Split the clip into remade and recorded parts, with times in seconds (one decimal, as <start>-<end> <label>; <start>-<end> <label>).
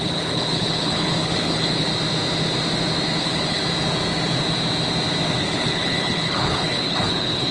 0.0-1.9 remade; 1.9-3.2 recorded; 3.2-3.6 remade; 3.6-5.4 recorded; 5.4-7.5 remade